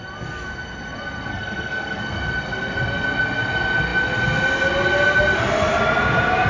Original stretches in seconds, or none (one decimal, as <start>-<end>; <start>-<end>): 0.0-1.3; 2.0-6.5